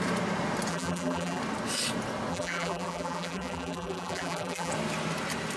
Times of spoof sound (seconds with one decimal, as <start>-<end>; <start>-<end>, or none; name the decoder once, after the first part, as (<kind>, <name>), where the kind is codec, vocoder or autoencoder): 0.7-1.4 (vocoder, BigVGAN v2); 2.3-4.7

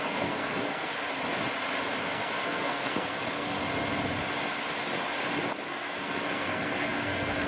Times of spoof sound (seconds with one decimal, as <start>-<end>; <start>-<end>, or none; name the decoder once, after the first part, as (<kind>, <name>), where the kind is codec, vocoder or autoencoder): 0.0-0.9 (codec, SNAC); 2.0-3.6; 5.7-7.5

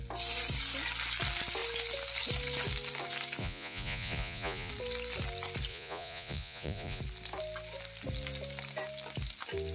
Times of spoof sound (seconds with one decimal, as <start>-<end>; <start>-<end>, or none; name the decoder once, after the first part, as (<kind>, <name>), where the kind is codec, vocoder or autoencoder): 3.4-4.7 (vocoder, Vocos); 5.7-7.0